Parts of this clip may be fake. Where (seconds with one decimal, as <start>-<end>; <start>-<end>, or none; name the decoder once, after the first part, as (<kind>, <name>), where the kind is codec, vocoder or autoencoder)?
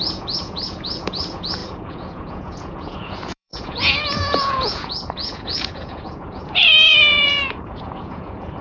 0.0-8.6 (vocoder, Vocos)